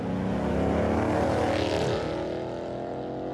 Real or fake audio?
real